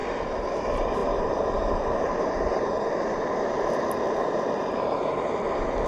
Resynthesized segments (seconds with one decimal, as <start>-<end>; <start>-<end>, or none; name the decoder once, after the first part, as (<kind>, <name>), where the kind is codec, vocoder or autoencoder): 0.0-5.9 (vocoder, BigVGAN v2)